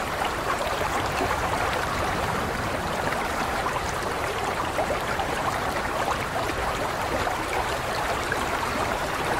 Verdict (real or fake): fake